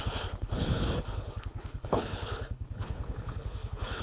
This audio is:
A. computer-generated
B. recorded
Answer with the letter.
A